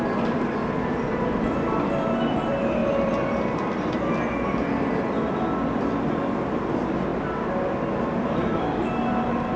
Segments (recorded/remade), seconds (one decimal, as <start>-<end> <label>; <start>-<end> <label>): 0.0-7.1 remade; 7.1-7.9 recorded; 7.9-9.6 remade